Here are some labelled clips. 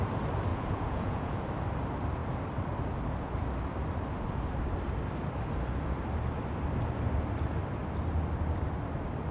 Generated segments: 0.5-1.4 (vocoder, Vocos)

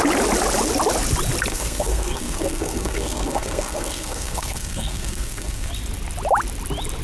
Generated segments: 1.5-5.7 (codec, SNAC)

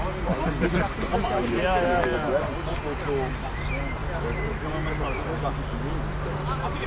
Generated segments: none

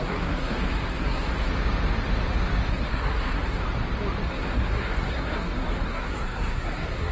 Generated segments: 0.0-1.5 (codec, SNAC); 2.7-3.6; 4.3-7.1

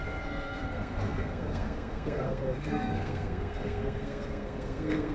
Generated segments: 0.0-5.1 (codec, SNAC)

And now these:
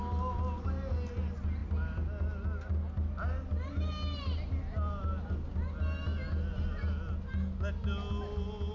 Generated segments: none

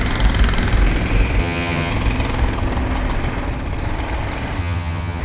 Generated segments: 1.4-1.9 (vocoder, HiFi-GAN); 4.6-5.2

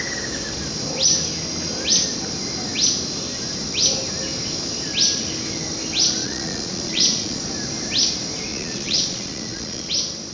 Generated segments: 6.2-7.4 (vocoder, Vocos); 8.5-9.9